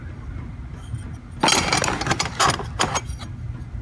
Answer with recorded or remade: recorded